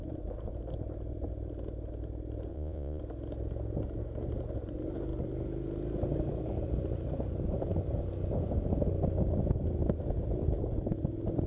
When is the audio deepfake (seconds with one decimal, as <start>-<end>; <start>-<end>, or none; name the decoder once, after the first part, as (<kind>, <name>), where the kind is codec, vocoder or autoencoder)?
2.5-3.0 (vocoder, Vocos)